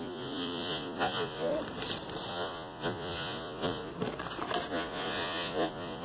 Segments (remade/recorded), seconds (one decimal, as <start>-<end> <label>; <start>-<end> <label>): 0.0-1.5 remade; 1.5-2.3 recorded; 2.3-3.9 remade; 3.9-4.7 recorded; 4.7-6.0 remade